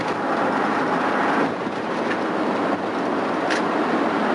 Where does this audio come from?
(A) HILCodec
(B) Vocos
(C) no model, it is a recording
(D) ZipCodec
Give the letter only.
C